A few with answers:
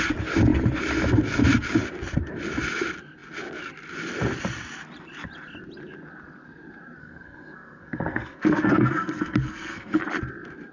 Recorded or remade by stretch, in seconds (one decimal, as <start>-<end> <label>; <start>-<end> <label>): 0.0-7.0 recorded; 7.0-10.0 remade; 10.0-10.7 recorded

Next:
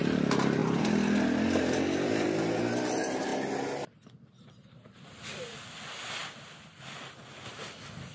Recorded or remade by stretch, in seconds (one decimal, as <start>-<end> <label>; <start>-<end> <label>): 0.0-8.1 recorded

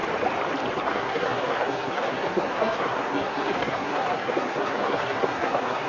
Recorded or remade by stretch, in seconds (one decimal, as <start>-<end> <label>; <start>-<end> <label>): 0.0-0.8 recorded; 0.8-5.9 remade

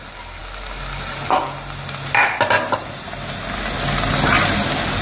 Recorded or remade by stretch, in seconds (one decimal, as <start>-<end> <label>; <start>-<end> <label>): 0.0-5.0 recorded